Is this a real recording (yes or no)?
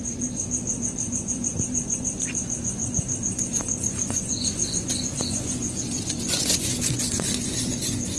no